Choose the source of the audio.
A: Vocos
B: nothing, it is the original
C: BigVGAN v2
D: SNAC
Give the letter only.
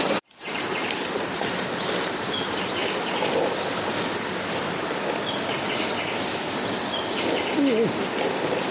B